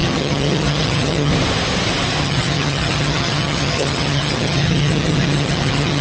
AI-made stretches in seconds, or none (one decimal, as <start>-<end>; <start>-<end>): 0.0-1.3; 2.2-6.0